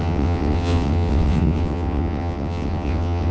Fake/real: fake